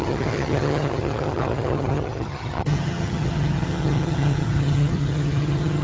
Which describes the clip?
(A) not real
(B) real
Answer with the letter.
A